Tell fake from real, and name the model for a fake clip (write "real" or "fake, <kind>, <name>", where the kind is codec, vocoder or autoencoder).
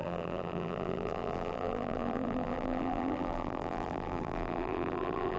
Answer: fake, vocoder, BigVGAN v2